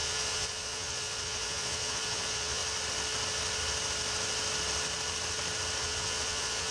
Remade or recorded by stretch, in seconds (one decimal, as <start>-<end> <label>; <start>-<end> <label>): 0.0-2.6 remade; 2.6-5.8 recorded; 5.8-6.7 remade